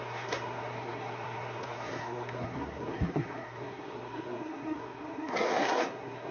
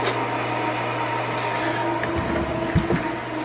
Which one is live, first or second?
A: second